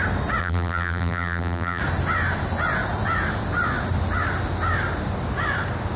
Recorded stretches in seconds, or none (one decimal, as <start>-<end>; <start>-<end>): 0.0-0.4; 1.8-6.0